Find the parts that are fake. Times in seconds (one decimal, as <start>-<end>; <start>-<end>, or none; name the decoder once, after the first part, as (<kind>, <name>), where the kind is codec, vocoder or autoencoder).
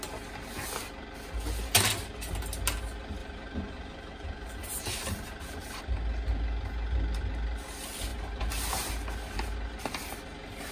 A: 3.2-5.8 (vocoder, BigVGAN v2)